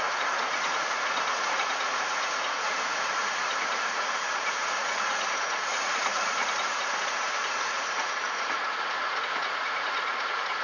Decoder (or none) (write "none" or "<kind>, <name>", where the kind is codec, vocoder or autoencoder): vocoder, Vocos